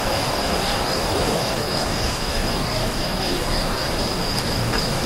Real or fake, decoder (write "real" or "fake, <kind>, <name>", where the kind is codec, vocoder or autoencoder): fake, codec, DAC